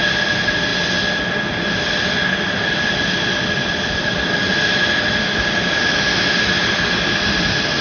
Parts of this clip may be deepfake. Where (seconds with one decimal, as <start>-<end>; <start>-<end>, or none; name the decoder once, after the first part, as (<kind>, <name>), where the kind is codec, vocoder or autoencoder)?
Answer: none